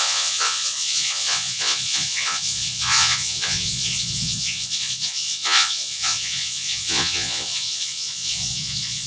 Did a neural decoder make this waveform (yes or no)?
yes